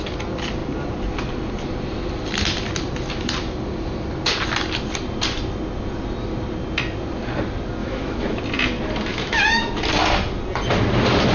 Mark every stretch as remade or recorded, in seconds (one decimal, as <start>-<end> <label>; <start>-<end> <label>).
0.0-7.8 recorded; 7.8-8.4 remade; 8.4-9.1 recorded; 9.1-9.7 remade; 9.7-11.3 recorded